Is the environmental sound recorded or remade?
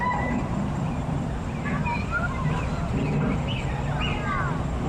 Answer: recorded